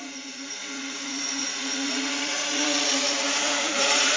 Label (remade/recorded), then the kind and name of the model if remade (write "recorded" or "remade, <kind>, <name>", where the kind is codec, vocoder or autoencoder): remade, vocoder, Vocos